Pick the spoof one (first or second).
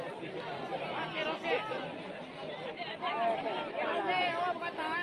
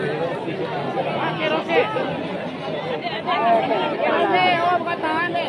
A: first